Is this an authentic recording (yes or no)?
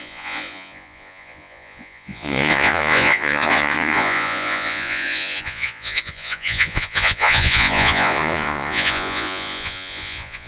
no